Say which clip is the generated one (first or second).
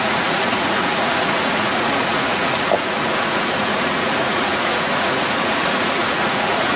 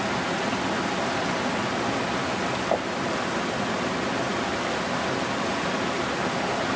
first